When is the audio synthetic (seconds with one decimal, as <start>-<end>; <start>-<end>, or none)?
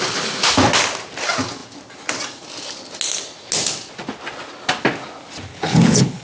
5.5-6.2